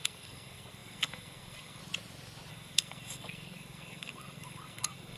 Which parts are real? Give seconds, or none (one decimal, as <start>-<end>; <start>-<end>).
1.8-2.5